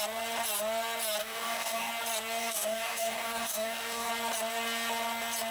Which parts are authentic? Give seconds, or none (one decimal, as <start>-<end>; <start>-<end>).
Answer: 0.0-1.2; 1.9-2.4; 4.1-5.5